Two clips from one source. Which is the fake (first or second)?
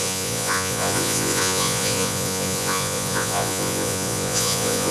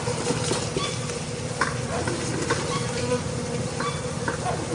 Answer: first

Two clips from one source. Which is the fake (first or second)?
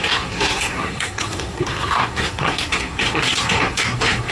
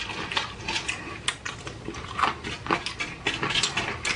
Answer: first